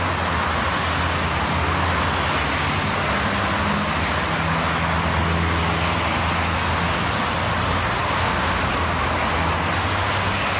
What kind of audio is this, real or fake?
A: real